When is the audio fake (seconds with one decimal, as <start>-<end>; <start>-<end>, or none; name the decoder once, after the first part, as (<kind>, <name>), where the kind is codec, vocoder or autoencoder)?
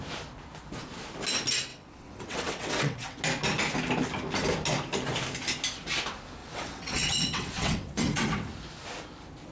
1.7-3.2 (vocoder, WaveNeXt); 6.4-8.5